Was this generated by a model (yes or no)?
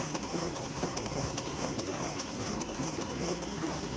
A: yes